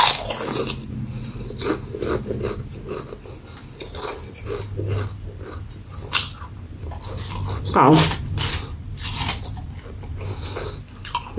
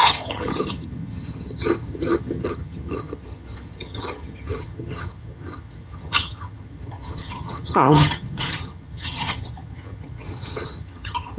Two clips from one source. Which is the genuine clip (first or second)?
first